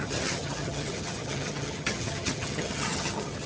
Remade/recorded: remade